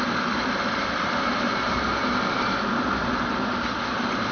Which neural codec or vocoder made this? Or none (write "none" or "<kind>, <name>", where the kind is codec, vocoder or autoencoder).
vocoder, BigVGAN v2